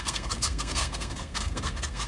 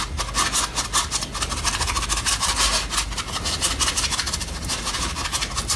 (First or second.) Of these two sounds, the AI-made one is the first